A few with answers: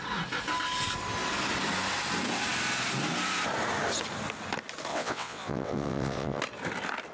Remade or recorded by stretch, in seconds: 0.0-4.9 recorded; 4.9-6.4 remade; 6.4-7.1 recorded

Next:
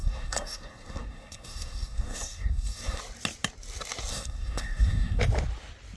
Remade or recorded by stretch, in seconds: 0.0-3.0 remade; 3.0-4.1 recorded; 4.1-5.2 remade; 5.2-6.0 recorded

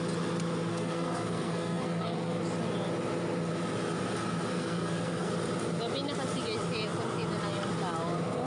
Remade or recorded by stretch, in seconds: 0.0-0.7 recorded; 0.7-2.4 remade; 2.4-4.5 recorded; 4.5-5.3 remade; 5.3-8.5 recorded

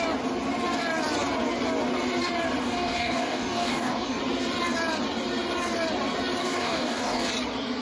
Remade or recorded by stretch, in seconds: 0.0-2.6 recorded; 2.6-4.2 remade; 4.2-6.4 recorded; 6.4-7.3 remade; 7.3-7.8 recorded

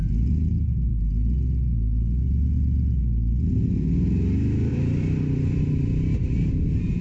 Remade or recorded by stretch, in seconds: 0.0-0.9 recorded; 0.9-3.0 remade; 3.0-4.7 recorded; 4.7-6.5 remade; 6.5-7.0 recorded

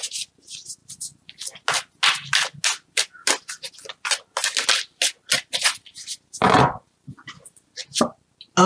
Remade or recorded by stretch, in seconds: 0.0-8.7 recorded

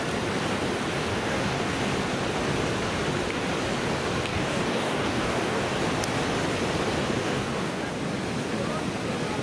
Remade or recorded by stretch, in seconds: 0.0-1.1 recorded; 1.1-1.7 remade; 1.7-4.3 recorded; 4.3-5.6 remade; 5.6-7.2 recorded; 7.2-7.8 remade; 7.8-9.4 recorded